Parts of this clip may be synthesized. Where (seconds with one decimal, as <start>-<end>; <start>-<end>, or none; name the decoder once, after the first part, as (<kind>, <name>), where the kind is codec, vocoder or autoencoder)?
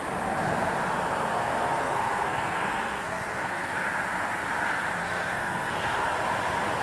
1.3-3.7 (codec, SNAC); 5.0-6.0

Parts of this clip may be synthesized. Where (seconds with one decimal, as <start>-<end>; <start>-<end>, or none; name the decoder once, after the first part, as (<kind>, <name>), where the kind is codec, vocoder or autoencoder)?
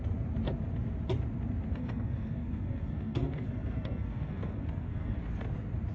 1.7-5.2 (codec, SNAC)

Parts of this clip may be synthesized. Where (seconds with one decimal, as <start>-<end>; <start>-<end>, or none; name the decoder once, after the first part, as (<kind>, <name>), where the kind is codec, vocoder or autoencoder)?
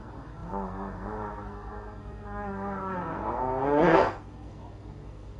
0.0-5.4 (codec, SNAC)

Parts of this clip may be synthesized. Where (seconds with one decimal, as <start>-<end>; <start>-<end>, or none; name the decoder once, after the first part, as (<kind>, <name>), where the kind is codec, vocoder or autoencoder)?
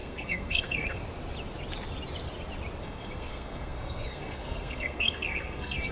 0.0-1.0 (codec, SNAC); 2.8-5.9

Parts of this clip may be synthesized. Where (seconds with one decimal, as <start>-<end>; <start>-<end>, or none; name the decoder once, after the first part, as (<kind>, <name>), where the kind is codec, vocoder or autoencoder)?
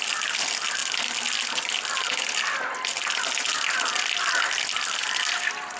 none